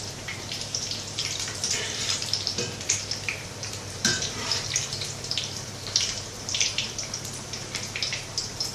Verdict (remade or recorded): remade